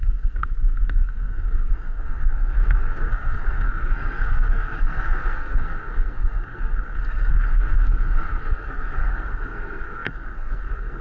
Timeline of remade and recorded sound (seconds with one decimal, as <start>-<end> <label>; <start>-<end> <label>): 0.0-11.0 remade